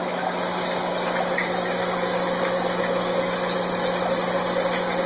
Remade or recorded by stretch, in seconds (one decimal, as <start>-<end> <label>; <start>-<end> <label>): 0.0-5.1 recorded